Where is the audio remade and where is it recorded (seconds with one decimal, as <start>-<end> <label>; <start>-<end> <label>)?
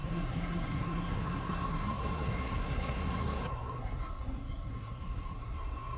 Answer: 0.0-6.0 remade